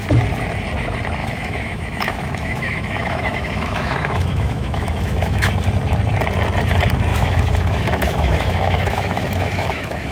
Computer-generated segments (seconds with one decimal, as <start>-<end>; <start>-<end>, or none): 1.2-5.5; 7.1-10.1